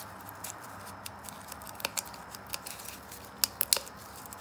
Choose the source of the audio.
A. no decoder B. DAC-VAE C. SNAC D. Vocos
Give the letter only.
A